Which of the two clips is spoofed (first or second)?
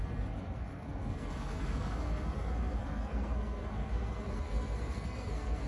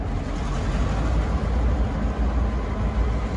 first